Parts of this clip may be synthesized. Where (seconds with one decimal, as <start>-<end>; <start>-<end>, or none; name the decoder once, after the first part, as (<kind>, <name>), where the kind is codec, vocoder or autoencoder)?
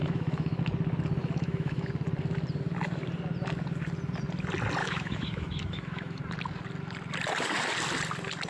0.0-0.6 (autoencoder, DAC-VAE); 1.2-1.9; 4.8-6.2